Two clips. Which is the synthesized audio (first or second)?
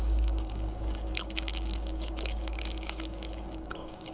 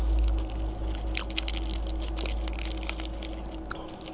first